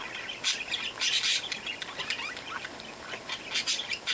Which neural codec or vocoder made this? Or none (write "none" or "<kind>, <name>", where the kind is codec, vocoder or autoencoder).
none